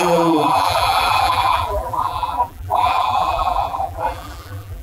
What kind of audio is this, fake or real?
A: fake